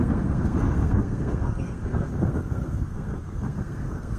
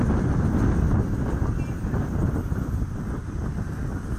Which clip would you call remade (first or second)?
first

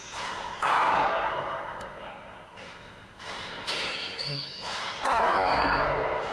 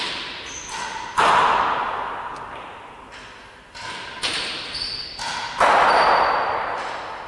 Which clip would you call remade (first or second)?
first